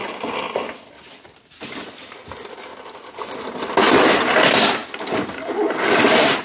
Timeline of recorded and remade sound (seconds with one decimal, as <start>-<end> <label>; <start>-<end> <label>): 0.0-6.4 recorded